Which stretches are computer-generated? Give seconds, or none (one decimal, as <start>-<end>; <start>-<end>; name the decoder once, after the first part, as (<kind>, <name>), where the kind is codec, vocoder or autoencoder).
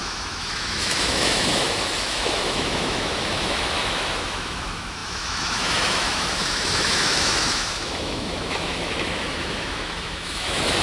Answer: 0.0-10.8 (autoencoder, DAC-VAE)